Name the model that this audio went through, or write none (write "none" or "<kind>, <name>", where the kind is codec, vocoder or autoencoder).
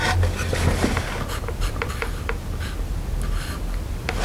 vocoder, BigVGAN v2